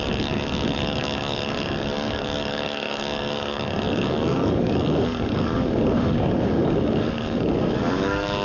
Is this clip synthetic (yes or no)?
yes